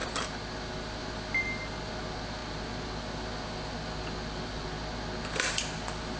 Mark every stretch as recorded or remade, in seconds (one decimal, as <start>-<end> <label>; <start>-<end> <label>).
0.0-6.2 recorded